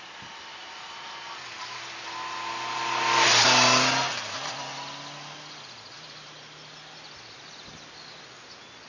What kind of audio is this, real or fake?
real